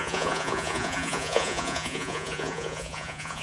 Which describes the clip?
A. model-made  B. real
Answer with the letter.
A